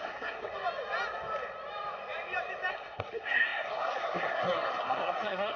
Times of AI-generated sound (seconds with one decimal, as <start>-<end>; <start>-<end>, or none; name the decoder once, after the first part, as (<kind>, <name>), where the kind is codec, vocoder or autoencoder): 0.0-0.5 (codec, SNAC); 2.7-5.6